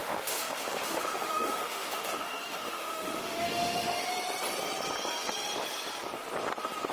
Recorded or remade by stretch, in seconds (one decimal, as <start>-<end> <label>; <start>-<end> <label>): 0.0-4.1 remade; 4.1-6.9 recorded

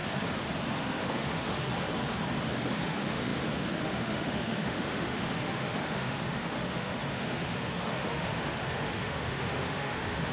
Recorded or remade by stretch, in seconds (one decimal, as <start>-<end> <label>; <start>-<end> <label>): 0.0-0.8 recorded; 0.8-1.7 remade; 1.7-2.7 recorded; 2.7-10.3 remade

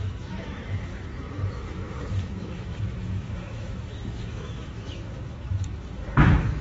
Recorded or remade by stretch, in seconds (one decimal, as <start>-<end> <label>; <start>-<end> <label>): 0.0-6.6 remade

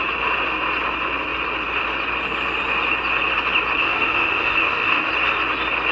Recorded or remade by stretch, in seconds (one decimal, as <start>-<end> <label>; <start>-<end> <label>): 0.0-3.8 recorded; 3.8-5.1 remade; 5.1-5.9 recorded

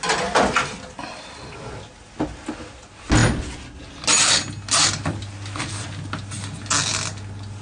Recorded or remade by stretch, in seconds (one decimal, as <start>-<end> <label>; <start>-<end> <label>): 0.0-7.6 recorded

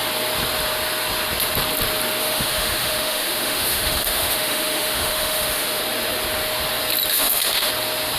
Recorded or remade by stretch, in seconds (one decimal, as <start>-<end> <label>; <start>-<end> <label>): 0.0-2.2 recorded; 2.2-5.8 remade; 5.8-7.1 recorded; 7.1-7.7 remade; 7.7-8.2 recorded

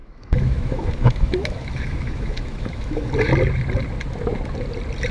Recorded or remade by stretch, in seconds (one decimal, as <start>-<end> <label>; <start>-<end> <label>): 0.0-3.1 remade; 3.1-5.1 recorded